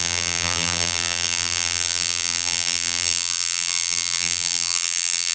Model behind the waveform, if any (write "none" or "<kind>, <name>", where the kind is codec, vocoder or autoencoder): vocoder, BigVGAN v2